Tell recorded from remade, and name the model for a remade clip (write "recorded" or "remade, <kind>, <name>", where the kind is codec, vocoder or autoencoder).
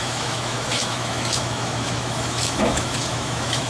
remade, autoencoder, DAC-VAE